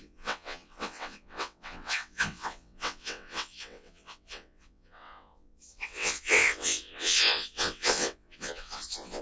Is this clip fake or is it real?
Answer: fake